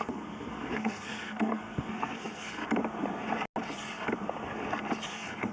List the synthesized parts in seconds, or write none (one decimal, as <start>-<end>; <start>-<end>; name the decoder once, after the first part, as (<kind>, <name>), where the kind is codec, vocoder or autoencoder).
0.0-2.6 (codec, SNAC); 5.1-5.5